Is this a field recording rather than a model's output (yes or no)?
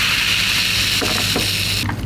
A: yes